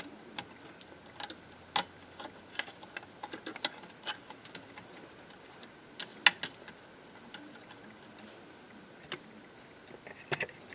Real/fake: real